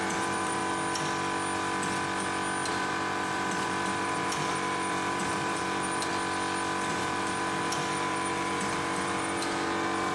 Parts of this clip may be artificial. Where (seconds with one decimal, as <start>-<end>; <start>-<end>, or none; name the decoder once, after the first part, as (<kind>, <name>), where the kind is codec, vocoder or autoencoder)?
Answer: 0.0-0.6 (vocoder, BigVGAN v2); 2.7-6.1; 6.9-10.1

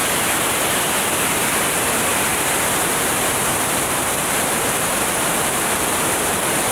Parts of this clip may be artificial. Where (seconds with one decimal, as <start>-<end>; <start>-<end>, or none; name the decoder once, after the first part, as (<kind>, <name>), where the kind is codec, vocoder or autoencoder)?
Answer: 3.5-6.7 (vocoder, BigVGAN v2)

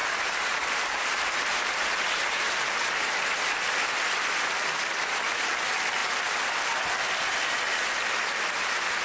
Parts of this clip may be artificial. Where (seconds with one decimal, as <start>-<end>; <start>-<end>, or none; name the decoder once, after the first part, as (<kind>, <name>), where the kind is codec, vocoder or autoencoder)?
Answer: 0.0-3.1 (vocoder, BigVGAN v2)

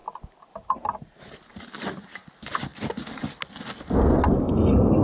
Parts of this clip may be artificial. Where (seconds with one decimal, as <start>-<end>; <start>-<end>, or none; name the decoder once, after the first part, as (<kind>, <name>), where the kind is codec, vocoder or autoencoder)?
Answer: 0.0-1.6 (vocoder, BigVGAN v2)

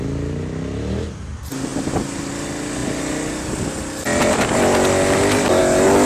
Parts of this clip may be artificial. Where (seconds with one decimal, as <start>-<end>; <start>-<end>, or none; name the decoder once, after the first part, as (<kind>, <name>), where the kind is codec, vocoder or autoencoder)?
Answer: none

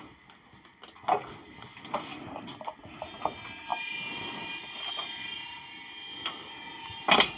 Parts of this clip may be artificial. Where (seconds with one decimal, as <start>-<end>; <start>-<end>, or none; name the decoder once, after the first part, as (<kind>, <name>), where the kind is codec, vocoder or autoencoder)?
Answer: 2.1-2.8 (vocoder, BigVGAN v2)

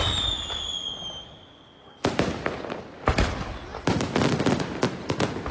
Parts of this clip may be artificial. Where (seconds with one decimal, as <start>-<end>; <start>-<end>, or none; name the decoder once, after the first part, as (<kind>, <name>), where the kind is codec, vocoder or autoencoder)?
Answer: none

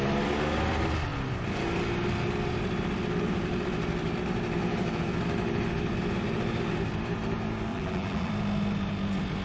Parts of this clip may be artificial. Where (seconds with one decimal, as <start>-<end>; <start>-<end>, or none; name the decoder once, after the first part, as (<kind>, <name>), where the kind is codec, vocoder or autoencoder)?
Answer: 7.7-8.3 (vocoder, BigVGAN v2)